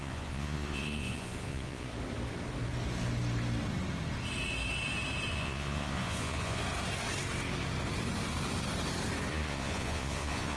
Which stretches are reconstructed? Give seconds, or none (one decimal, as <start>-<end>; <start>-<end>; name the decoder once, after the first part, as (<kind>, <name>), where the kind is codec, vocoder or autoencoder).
0.0-1.9 (vocoder, Vocos); 5.3-6.6; 9.3-10.6